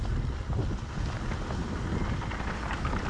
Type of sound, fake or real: real